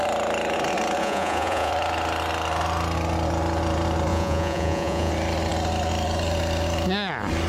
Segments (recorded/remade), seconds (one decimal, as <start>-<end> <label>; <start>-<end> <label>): 0.0-1.0 recorded; 1.0-1.7 remade; 1.7-4.1 recorded; 4.1-5.1 remade; 5.1-7.5 recorded